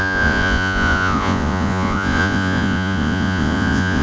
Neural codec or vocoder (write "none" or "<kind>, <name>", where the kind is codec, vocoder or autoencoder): vocoder, Vocos